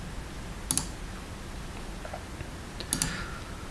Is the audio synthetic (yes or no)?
no